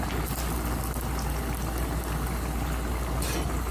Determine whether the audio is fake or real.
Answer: real